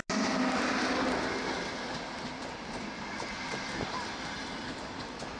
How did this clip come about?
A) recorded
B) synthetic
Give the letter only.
A